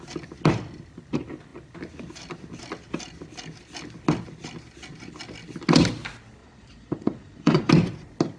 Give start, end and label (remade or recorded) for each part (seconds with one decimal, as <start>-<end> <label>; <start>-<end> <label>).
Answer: 0.0-6.4 recorded; 6.4-7.7 remade; 7.7-8.4 recorded